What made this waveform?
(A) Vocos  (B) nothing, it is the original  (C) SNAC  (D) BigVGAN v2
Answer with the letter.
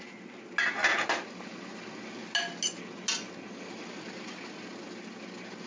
B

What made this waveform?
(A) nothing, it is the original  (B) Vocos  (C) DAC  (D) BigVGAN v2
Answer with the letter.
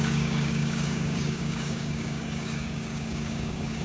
C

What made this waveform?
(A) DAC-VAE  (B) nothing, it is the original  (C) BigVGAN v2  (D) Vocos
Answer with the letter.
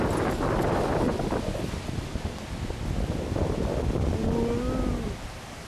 B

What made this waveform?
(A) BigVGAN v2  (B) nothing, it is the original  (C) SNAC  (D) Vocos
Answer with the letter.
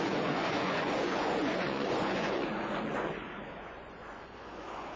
D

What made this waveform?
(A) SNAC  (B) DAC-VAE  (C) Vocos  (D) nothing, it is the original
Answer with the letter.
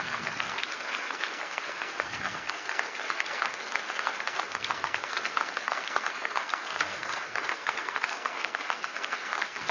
A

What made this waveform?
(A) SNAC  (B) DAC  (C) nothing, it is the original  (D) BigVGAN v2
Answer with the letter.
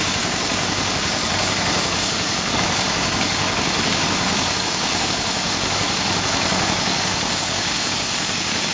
B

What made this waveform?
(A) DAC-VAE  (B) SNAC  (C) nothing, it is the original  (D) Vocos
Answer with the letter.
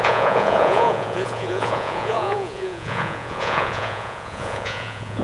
D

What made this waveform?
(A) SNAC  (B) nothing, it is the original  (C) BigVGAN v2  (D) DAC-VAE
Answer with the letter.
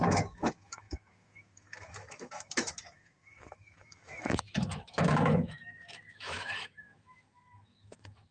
D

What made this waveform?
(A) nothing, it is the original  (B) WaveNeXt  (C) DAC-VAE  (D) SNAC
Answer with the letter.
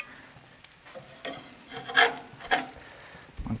A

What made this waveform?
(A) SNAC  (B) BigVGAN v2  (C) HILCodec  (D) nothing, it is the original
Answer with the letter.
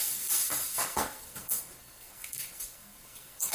A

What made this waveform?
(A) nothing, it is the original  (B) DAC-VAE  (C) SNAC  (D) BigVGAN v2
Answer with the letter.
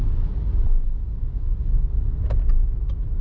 A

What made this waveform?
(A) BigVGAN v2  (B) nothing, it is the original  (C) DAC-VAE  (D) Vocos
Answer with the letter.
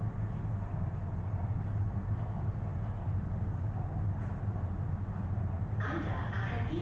B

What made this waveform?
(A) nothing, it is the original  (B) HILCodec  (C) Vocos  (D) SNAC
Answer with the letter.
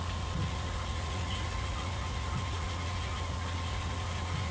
C